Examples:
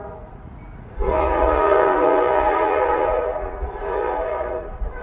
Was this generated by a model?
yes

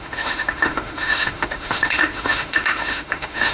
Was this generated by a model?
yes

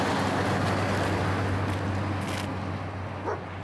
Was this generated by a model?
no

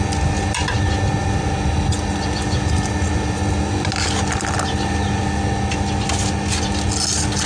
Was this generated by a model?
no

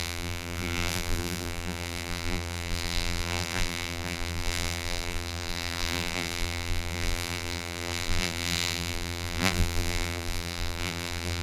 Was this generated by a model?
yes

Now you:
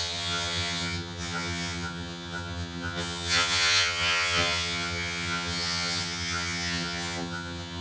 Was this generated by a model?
yes